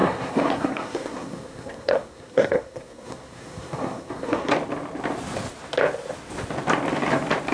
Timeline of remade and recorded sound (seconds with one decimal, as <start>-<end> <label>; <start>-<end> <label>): 0.0-4.5 remade; 4.5-7.5 recorded